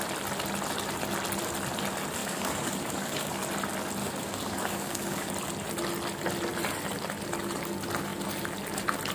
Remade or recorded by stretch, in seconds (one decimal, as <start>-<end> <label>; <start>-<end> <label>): 0.0-2.2 recorded; 2.2-3.4 remade; 3.4-4.0 recorded; 4.0-5.3 remade; 5.3-9.1 recorded